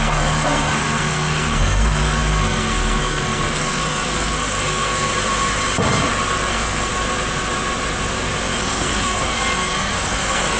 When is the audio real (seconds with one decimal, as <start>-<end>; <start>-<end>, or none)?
5.1-6.5; 6.9-8.6